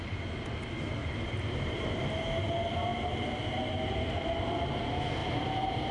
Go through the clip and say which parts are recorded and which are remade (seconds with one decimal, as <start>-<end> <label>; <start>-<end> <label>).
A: 0.0-1.0 recorded; 1.0-2.0 remade; 2.0-2.9 recorded; 2.9-4.2 remade; 4.2-5.2 recorded; 5.2-5.9 remade